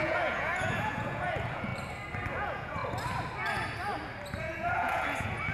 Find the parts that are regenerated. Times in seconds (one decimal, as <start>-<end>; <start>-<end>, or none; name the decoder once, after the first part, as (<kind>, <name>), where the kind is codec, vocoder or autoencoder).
0.0-1.7 (vocoder, Vocos); 2.3-2.8; 4.4-5.5